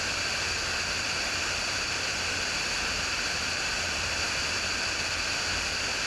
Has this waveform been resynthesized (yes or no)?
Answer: no